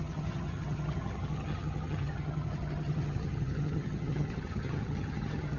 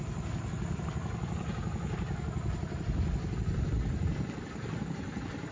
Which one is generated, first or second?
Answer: first